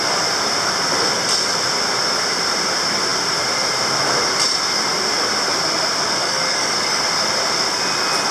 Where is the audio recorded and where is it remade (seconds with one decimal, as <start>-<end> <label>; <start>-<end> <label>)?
0.0-6.2 recorded; 6.2-7.0 remade; 7.0-8.3 recorded